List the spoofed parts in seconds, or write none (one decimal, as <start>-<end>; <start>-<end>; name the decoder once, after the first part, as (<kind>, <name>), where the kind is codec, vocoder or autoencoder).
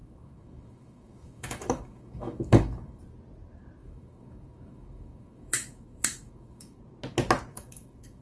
0.0-3.0 (autoencoder, DAC-VAE); 3.8-6.8; 7.5-8.2